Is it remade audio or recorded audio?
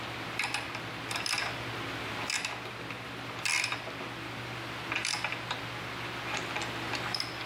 recorded